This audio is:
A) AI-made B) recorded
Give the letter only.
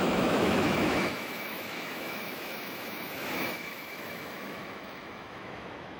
A